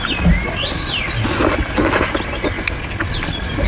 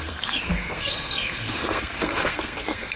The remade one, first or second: second